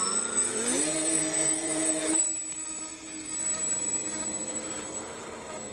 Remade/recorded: remade